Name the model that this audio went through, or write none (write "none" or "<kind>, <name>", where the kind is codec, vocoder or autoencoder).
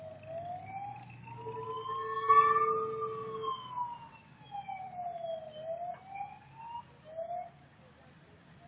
none